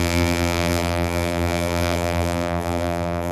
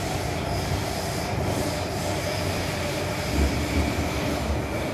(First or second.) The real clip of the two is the second